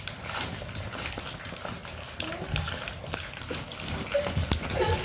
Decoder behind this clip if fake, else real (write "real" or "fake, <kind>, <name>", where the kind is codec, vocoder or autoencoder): real